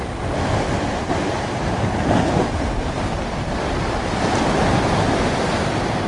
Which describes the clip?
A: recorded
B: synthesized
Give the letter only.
A